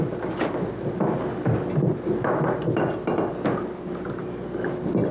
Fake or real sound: real